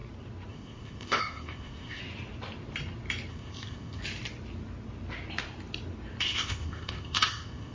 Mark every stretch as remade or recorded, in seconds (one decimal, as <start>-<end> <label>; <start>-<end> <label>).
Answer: 0.0-0.5 recorded; 0.5-2.0 remade; 2.0-3.3 recorded; 3.3-4.0 remade; 4.0-6.2 recorded; 6.2-7.7 remade